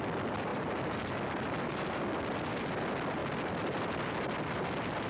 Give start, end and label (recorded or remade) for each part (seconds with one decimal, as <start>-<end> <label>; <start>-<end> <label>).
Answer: 0.0-5.1 recorded